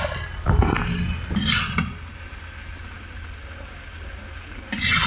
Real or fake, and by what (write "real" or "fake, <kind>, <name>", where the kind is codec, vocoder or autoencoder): real